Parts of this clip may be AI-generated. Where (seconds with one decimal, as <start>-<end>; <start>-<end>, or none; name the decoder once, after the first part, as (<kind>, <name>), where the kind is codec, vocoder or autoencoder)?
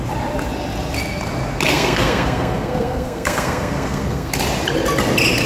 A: 1.7-4.3 (codec, SNAC)